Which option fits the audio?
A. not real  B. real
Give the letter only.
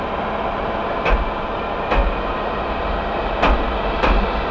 B